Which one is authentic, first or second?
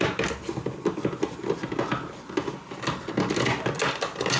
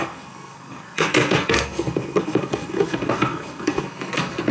first